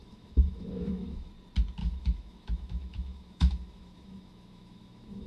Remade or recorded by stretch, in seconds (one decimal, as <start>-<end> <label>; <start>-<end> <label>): 0.0-1.3 remade; 1.3-1.8 recorded; 1.8-5.3 remade